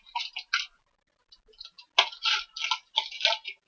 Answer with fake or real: real